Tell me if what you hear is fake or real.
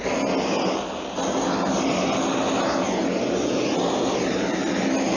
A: real